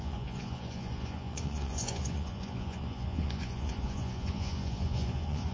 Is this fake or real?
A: fake